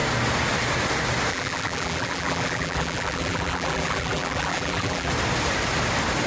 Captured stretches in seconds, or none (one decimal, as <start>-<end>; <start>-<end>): 0.0-1.3; 5.1-6.3